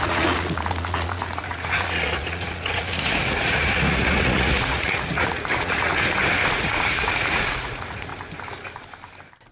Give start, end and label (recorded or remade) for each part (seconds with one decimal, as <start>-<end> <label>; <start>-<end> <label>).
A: 0.0-5.9 remade; 5.9-6.5 recorded; 6.5-8.1 remade; 8.1-9.5 recorded